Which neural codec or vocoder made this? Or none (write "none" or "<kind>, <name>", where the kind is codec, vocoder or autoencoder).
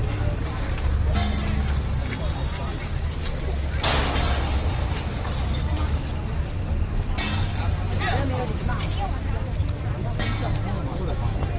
none